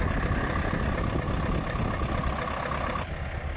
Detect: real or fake real